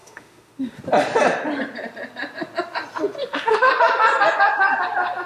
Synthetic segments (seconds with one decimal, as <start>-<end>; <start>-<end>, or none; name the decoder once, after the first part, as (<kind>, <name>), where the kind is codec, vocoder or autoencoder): 0.0-0.8 (autoencoder, DAC-VAE); 3.2-3.7